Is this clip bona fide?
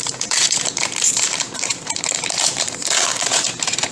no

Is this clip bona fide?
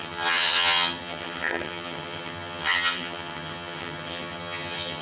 no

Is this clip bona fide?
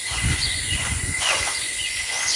no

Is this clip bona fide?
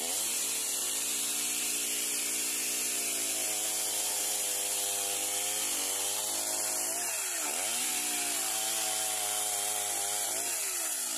yes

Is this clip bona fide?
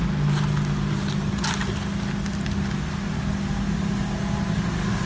yes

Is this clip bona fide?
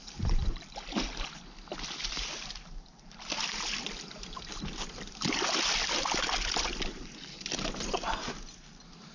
yes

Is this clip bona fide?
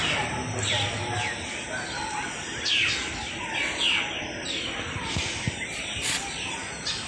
yes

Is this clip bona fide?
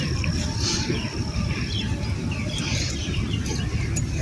yes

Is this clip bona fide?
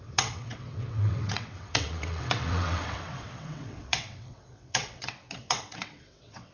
no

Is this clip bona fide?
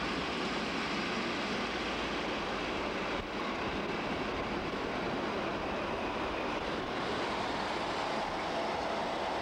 yes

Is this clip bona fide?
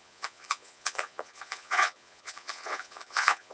no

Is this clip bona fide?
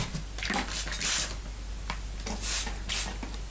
yes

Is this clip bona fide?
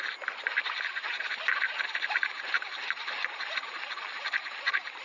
yes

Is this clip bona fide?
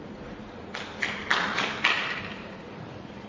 no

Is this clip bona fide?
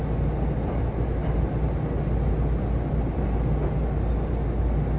yes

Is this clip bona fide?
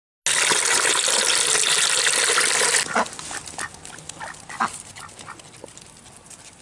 yes